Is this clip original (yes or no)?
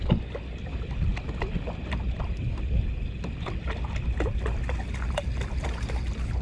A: yes